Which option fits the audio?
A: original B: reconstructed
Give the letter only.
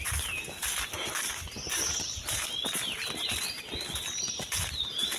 A